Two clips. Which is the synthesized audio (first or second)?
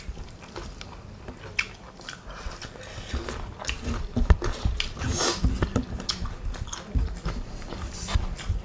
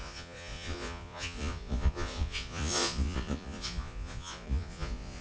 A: second